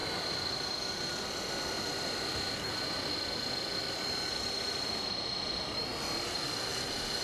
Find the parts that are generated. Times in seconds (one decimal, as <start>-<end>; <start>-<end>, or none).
none

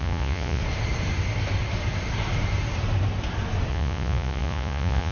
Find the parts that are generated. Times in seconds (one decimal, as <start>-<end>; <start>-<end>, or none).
0.0-0.6; 3.7-5.1

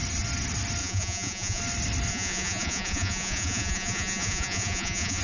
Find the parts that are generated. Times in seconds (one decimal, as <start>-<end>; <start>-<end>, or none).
0.8-1.6; 2.1-5.2

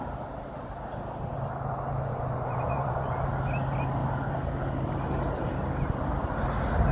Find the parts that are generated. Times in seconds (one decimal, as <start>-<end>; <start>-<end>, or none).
2.1-3.1

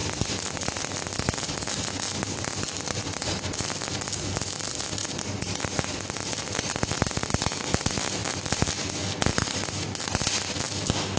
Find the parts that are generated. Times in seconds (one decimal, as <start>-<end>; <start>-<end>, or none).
none